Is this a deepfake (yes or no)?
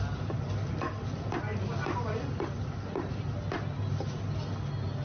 no